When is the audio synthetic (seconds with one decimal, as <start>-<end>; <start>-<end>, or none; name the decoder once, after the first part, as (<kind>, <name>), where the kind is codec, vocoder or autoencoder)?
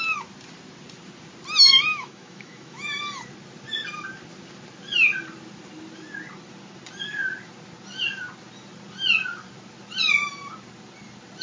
1.9-3.0 (autoencoder, DAC-VAE)